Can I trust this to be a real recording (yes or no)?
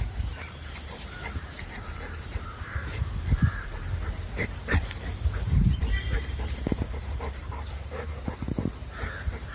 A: no